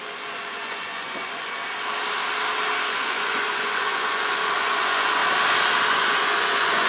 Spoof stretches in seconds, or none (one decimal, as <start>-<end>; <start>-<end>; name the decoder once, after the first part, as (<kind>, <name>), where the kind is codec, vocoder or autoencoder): 0.0-1.6 (vocoder, Vocos); 2.8-5.2; 5.9-6.9